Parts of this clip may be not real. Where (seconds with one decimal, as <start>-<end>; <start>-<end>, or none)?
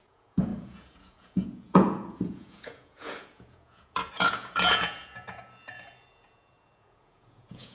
0.0-7.7